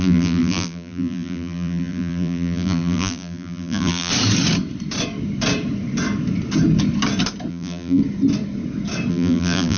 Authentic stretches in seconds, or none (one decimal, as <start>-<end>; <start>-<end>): 4.1-7.5; 8.0-9.1